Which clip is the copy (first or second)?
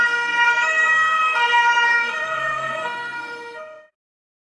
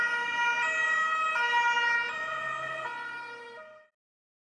first